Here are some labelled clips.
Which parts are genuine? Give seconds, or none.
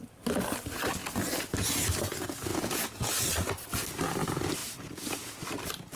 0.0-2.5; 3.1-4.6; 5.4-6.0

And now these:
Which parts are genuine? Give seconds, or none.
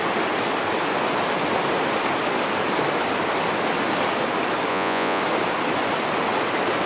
0.0-4.7; 5.2-6.9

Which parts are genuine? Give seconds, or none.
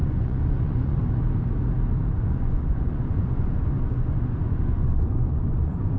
1.0-2.1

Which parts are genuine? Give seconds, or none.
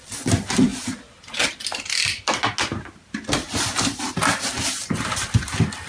0.0-5.9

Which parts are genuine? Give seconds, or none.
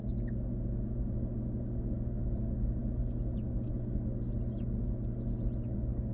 0.0-6.1